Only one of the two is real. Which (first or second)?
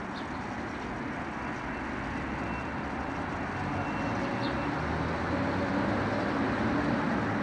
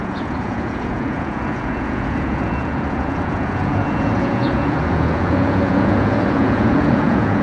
first